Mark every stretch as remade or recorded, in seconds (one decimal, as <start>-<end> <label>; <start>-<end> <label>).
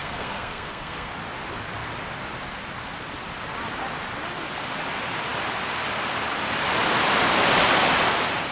0.0-1.1 remade; 1.1-8.5 recorded